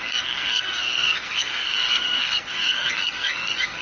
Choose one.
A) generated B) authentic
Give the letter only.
A